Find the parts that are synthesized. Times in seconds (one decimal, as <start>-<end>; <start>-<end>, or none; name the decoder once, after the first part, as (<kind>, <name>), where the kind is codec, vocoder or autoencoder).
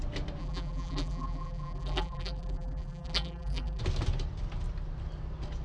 0.4-3.8 (vocoder, BigVGAN v2)